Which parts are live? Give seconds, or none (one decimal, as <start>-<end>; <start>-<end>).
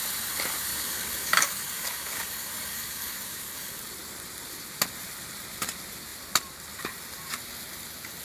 0.0-0.7; 3.8-8.2